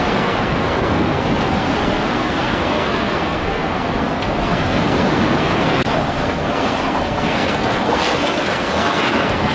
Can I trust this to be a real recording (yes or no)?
no